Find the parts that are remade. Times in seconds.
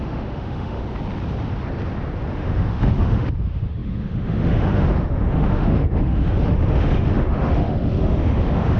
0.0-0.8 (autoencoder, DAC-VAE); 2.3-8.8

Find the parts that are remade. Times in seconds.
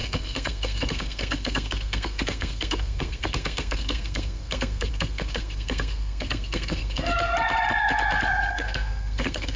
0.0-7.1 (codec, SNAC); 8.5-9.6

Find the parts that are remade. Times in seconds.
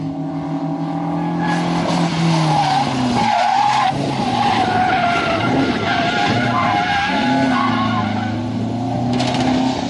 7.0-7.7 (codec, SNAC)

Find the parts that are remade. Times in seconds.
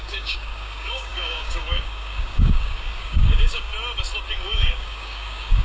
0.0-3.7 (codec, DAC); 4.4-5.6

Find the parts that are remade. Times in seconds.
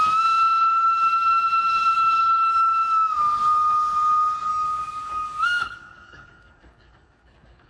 4.5-7.7 (codec, DAC)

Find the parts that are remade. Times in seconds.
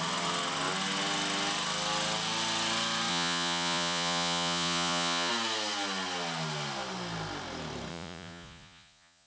3.1-5.3 (vocoder, Vocos); 7.9-9.3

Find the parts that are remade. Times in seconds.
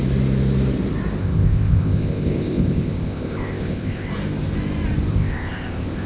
1.2-4.1 (codec, ZipCodec); 5.1-6.1